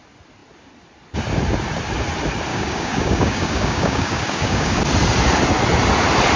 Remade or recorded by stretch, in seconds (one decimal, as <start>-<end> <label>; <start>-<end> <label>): 0.0-2.5 recorded; 2.5-4.8 remade; 4.8-6.4 recorded